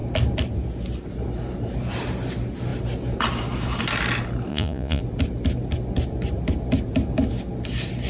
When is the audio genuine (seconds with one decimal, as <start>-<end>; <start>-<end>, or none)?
0.0-4.5; 5.0-8.1